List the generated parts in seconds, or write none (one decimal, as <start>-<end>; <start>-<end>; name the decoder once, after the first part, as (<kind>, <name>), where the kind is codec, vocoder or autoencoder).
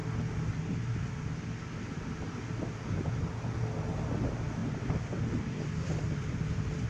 4.6-6.9 (vocoder, BigVGAN v2)